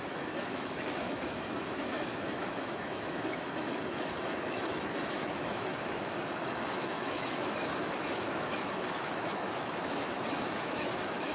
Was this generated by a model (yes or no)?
yes